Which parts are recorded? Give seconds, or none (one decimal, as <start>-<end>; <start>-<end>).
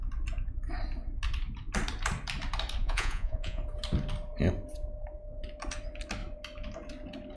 0.0-2.8; 3.6-7.4